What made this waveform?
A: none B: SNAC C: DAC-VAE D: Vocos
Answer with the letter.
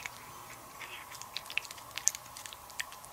A